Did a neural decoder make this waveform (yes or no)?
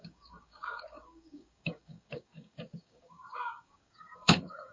yes